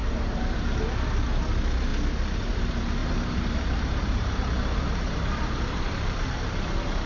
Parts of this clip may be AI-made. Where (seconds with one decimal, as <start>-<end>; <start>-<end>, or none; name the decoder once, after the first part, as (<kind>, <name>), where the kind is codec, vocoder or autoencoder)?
0.0-0.8 (vocoder, BigVGAN v2); 3.0-6.1